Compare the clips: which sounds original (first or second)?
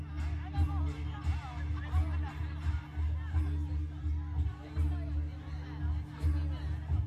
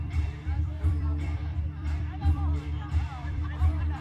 first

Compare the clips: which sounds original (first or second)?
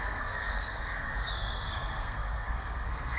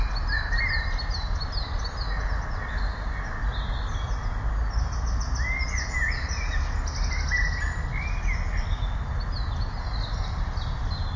second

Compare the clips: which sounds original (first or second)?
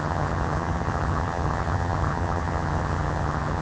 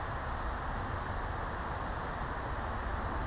second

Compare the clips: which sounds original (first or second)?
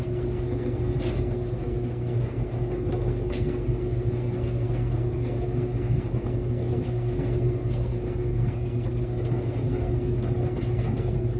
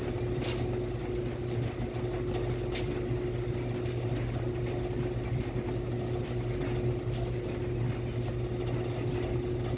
second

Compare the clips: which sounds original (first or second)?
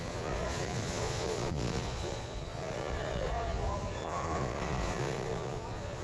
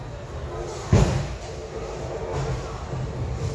second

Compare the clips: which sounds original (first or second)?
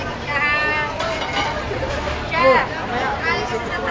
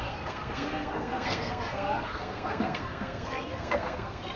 first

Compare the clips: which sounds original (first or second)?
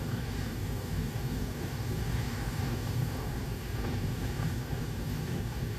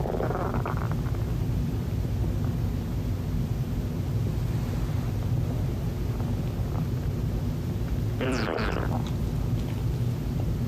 second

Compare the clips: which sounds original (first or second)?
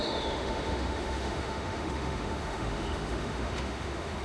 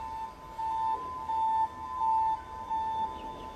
second